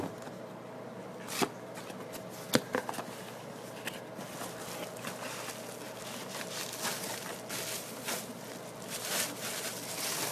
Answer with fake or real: real